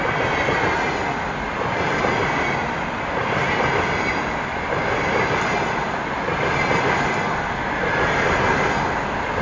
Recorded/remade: recorded